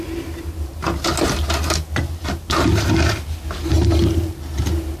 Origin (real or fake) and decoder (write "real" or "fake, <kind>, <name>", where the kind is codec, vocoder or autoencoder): real